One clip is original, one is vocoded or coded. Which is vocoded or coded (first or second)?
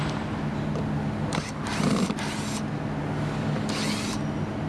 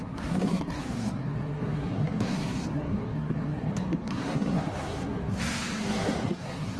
second